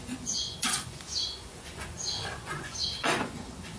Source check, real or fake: fake